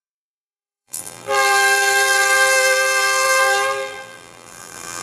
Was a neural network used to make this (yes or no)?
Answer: yes